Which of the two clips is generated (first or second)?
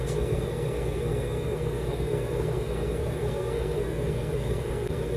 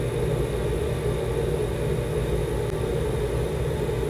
first